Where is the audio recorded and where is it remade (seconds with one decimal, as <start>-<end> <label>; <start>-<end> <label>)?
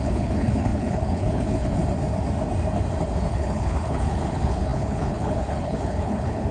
0.0-1.8 remade; 1.8-3.3 recorded; 3.3-6.5 remade